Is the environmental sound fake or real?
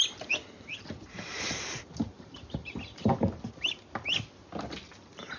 real